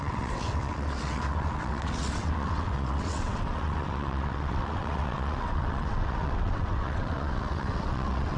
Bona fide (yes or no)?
no